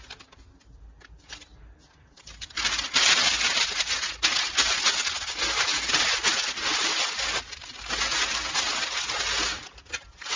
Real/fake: real